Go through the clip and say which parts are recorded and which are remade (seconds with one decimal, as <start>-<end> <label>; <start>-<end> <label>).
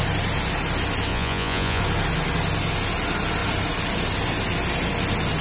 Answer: 0.0-1.1 recorded; 1.1-1.8 remade; 1.8-5.4 recorded